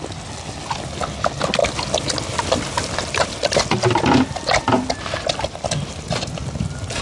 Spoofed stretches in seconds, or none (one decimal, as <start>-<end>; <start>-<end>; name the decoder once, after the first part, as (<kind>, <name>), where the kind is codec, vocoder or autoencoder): none